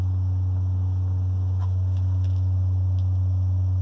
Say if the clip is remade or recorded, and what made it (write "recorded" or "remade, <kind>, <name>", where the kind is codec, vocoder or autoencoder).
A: recorded